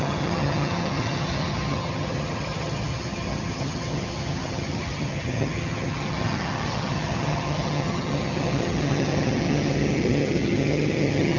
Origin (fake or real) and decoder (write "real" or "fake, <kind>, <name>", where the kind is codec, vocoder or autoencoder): fake, vocoder, HiFi-GAN